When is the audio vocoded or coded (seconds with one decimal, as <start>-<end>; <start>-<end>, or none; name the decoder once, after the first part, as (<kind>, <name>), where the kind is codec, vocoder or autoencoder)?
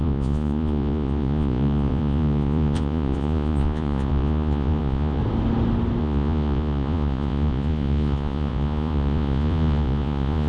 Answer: 0.0-5.2 (vocoder, Vocos); 6.0-10.5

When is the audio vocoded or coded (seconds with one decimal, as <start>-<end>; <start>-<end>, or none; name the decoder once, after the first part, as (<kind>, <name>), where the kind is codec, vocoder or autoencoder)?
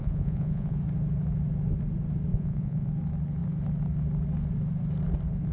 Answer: 0.0-0.8 (vocoder, Vocos); 2.3-2.9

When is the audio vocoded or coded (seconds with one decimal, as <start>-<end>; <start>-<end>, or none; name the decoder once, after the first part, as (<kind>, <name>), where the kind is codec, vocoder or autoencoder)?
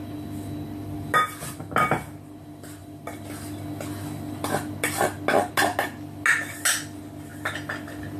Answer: none